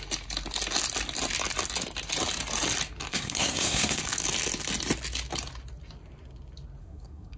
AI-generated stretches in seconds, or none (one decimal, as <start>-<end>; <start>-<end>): 3.1-4.0; 6.8-7.4